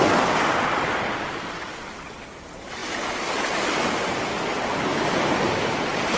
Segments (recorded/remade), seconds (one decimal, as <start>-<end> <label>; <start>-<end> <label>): 0.0-6.2 recorded